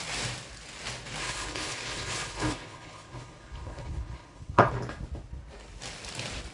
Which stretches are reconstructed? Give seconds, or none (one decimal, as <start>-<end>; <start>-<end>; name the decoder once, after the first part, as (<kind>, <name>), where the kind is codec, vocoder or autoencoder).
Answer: 1.2-4.7 (codec, HILCodec)